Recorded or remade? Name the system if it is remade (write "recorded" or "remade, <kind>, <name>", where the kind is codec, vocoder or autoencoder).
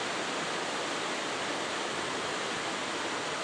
recorded